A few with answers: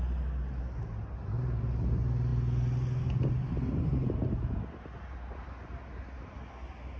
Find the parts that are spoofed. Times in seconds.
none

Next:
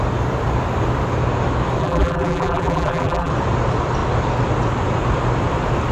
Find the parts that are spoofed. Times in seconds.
1.8-3.3 (vocoder, BigVGAN v2)

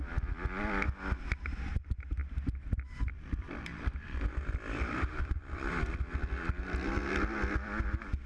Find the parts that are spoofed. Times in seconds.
2.2-6.9 (vocoder, BigVGAN v2)

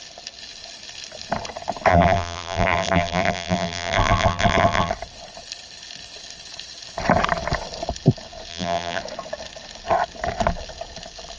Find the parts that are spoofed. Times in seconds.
1.9-4.9 (vocoder, BigVGAN v2); 8.5-9.0

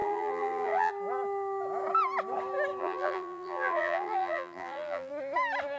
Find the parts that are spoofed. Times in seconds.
0.0-0.9 (vocoder, BigVGAN v2); 2.8-5.1

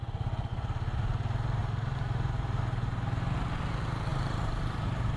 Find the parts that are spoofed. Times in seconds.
1.6-2.6 (vocoder, BigVGAN v2); 4.1-5.2